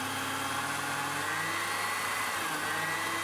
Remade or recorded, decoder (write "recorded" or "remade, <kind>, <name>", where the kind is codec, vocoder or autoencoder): recorded